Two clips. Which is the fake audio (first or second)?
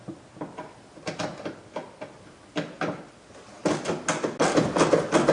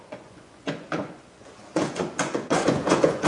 second